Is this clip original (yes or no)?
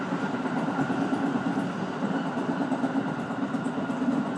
yes